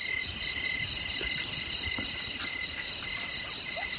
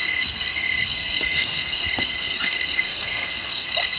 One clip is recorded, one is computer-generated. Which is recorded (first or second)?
first